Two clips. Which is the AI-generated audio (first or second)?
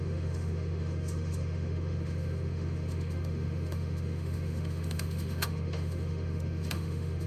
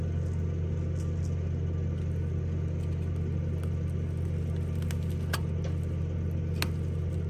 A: first